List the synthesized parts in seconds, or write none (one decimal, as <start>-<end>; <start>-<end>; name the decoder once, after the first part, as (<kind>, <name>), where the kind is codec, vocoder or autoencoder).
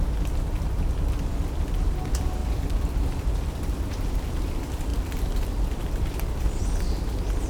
2.4-4.5 (vocoder, BigVGAN v2); 4.9-6.6